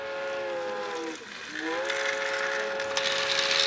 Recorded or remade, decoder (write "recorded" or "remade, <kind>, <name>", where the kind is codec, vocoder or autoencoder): recorded